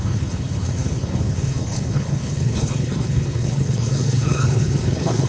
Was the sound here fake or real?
fake